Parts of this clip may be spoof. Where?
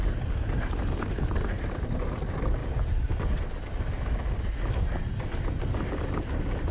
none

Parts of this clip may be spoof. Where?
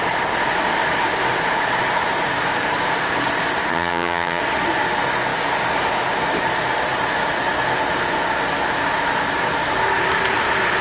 3.7-4.4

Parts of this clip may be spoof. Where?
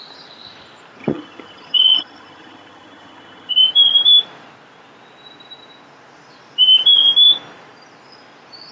1.0-3.5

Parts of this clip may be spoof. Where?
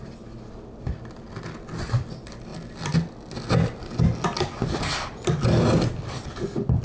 none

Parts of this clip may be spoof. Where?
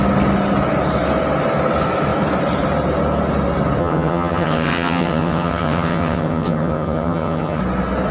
3.8-7.6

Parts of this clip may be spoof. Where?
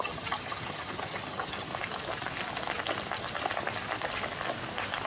0.0-1.7